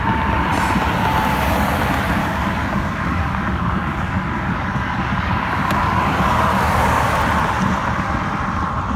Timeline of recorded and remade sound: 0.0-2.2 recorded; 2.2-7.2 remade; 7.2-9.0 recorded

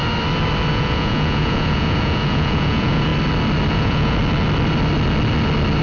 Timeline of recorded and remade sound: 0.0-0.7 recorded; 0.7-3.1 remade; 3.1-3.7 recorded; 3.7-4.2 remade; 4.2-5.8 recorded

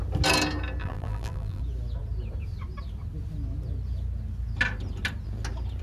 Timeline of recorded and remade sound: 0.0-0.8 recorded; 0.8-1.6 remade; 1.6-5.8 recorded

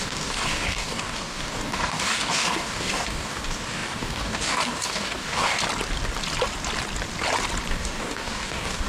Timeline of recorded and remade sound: 0.0-5.6 remade; 5.6-7.7 recorded; 7.7-8.9 remade

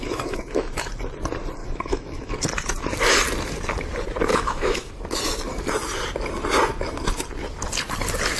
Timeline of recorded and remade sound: 0.0-0.9 remade; 0.9-1.6 recorded; 1.6-2.3 remade; 2.3-4.3 recorded; 4.3-4.9 remade; 4.9-8.4 recorded

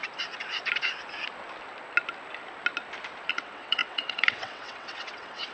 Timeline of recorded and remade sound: 0.0-3.3 recorded; 3.3-5.5 remade

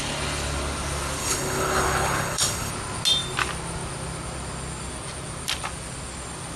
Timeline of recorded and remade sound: 0.0-1.2 recorded; 1.2-2.7 remade; 2.7-6.6 recorded

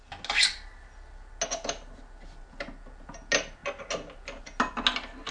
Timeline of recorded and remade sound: 0.0-5.3 recorded